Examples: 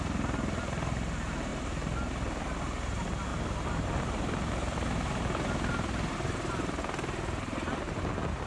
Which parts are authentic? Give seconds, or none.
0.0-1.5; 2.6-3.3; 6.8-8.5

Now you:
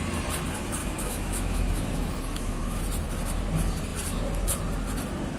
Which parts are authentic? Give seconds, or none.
0.0-0.8; 2.8-5.4

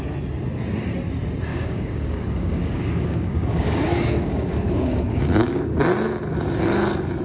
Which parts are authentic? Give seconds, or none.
0.0-1.5; 5.8-7.2

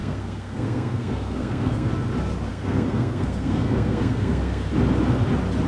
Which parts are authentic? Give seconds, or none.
1.9-2.5; 4.7-5.7

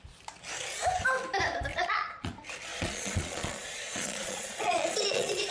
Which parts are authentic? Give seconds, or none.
0.0-1.7; 2.3-2.7

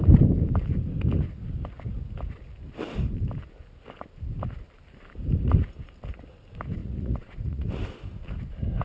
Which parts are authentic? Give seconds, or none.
0.0-6.8; 7.7-8.8

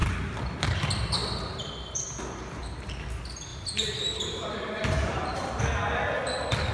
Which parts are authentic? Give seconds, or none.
0.0-3.5; 5.6-6.7

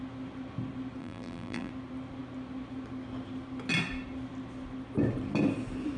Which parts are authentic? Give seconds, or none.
0.0-1.0; 1.7-6.0